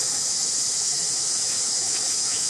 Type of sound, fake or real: fake